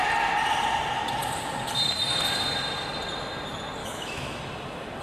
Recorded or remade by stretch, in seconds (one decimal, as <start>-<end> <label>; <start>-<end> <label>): 0.0-3.8 recorded; 3.8-4.4 remade; 4.4-5.0 recorded